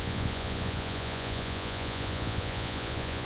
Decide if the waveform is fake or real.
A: fake